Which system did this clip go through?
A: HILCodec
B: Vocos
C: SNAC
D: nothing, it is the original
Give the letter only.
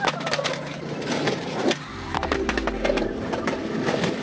D